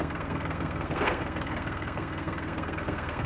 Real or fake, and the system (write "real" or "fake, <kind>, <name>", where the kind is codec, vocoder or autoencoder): fake, codec, SNAC